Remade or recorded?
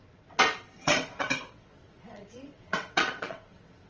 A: remade